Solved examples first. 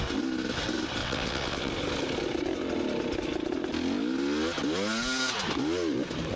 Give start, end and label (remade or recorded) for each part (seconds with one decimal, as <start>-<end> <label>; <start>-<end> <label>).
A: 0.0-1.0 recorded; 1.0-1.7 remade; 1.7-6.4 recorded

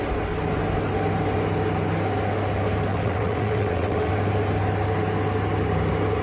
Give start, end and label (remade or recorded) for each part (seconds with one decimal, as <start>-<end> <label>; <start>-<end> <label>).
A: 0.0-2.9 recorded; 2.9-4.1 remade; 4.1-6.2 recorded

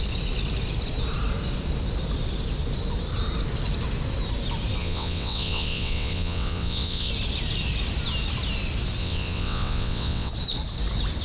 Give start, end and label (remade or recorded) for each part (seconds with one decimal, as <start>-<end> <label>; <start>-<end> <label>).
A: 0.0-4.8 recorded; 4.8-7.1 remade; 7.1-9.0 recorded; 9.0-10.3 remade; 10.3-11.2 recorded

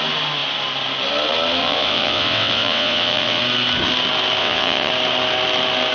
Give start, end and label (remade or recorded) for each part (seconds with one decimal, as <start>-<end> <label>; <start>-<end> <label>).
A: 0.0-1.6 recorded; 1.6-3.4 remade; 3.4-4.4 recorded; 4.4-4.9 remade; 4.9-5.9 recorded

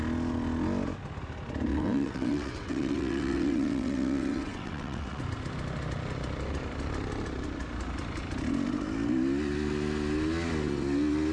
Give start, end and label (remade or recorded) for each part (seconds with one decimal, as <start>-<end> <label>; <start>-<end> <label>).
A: 0.0-1.7 recorded; 1.7-5.2 remade; 5.2-11.3 recorded